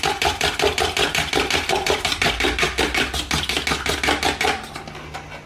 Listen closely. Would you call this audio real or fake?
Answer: real